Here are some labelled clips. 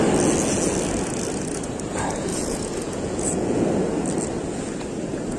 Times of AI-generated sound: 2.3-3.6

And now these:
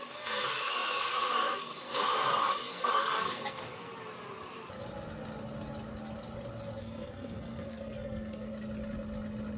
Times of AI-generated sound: 0.0-3.9; 6.8-8.5

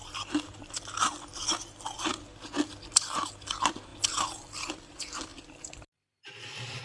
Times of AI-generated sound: 5.3-6.8

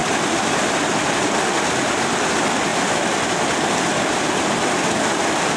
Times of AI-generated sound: none

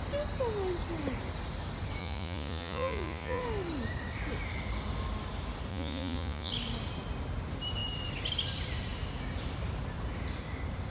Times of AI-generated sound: 2.0-3.4; 5.7-6.5

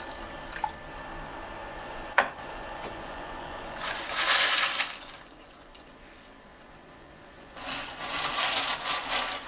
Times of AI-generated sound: 1.6-6.1; 6.5-9.5

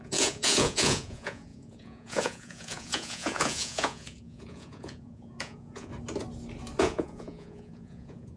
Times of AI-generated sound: 0.0-5.9; 6.8-8.4